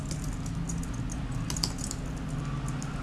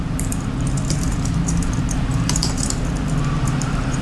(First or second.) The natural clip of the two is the first